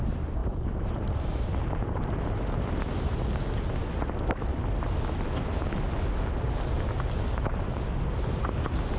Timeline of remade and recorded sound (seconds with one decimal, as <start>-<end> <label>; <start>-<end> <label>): 0.0-0.4 recorded; 0.4-2.7 remade; 2.7-9.0 recorded